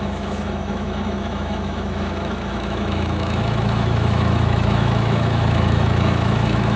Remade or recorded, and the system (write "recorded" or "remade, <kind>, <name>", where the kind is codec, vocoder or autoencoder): remade, autoencoder, DAC-VAE